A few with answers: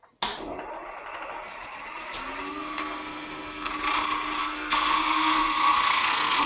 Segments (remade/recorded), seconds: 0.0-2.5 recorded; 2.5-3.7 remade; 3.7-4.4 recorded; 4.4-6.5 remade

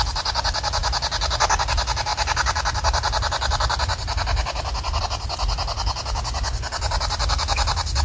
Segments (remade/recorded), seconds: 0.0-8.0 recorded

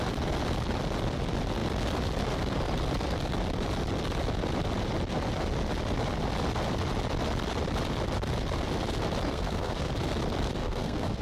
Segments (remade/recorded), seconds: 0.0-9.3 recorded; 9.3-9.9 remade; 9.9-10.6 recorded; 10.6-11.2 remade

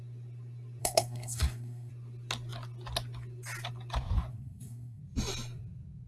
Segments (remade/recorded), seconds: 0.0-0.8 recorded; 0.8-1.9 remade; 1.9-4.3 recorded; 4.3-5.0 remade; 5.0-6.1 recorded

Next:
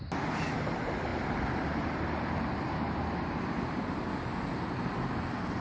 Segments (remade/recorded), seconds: 0.0-5.6 recorded